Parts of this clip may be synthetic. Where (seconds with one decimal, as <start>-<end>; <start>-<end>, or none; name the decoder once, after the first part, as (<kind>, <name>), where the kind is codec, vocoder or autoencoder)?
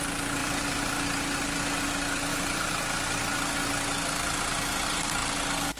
0.4-0.9 (vocoder, BigVGAN v2); 2.3-2.8